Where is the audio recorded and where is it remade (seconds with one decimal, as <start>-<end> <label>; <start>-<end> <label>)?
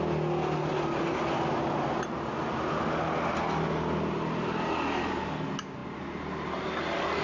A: 0.0-7.2 recorded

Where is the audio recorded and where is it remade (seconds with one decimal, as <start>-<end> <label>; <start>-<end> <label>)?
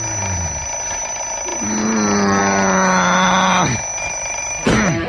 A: 0.0-3.9 recorded; 3.9-5.1 remade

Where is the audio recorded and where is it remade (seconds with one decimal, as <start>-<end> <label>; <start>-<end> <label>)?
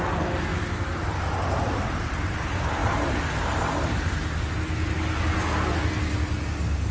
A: 0.0-0.5 recorded; 0.5-2.3 remade; 2.3-2.8 recorded; 2.8-5.9 remade; 5.9-6.9 recorded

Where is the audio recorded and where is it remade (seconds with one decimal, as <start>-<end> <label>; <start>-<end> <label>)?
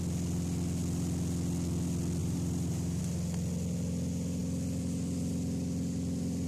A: 0.0-2.2 recorded; 2.2-3.0 remade; 3.0-6.5 recorded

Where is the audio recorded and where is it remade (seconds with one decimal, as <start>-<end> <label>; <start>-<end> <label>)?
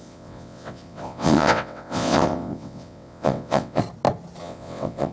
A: 0.0-3.8 remade; 3.8-4.4 recorded; 4.4-5.1 remade